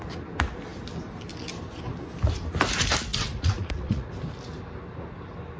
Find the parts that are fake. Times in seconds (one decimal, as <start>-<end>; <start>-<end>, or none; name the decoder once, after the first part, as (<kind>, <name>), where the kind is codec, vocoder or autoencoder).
3.1-4.1 (vocoder, Vocos)